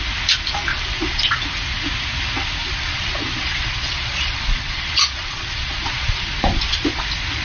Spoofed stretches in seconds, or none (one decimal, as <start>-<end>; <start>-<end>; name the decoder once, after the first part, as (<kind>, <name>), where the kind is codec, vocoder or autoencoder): 0.7-1.4 (vocoder, Vocos); 2.6-7.0